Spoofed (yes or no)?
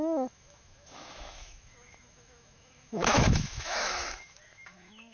yes